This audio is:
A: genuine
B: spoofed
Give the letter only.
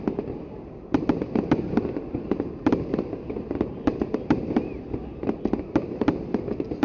B